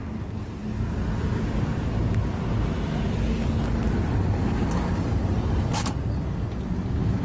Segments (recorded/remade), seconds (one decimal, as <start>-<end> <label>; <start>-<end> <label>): 0.0-7.2 recorded